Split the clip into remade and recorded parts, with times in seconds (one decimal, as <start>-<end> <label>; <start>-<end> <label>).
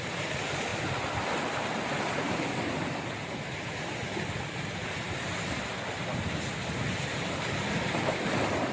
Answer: 0.0-8.7 recorded